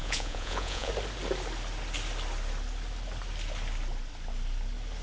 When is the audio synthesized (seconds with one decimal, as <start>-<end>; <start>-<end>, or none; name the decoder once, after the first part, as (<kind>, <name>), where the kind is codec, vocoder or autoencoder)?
0.0-0.9 (vocoder, Vocos)